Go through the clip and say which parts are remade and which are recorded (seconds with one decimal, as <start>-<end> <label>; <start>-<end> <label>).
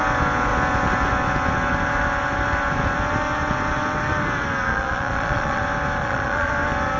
0.0-4.7 recorded; 4.7-5.6 remade; 5.6-6.0 recorded; 6.0-6.5 remade; 6.5-7.0 recorded